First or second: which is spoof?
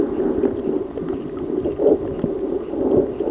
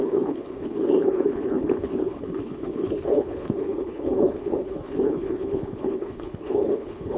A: second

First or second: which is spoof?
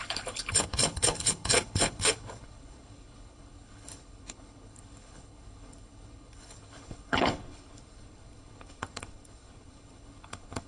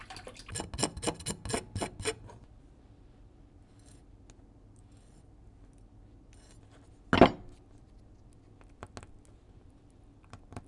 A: first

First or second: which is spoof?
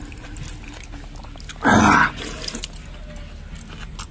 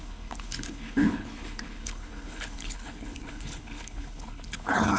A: second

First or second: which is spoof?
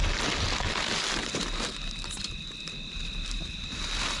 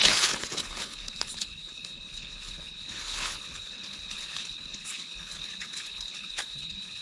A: second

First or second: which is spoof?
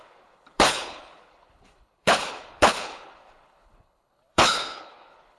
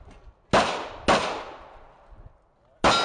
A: first